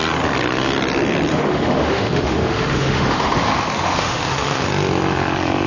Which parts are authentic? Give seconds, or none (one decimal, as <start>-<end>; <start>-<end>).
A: 0.0-1.3; 4.7-5.7